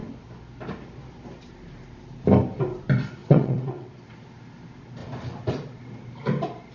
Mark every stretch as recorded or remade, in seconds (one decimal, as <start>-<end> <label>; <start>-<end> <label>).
0.0-3.2 recorded; 3.2-3.9 remade; 3.9-6.7 recorded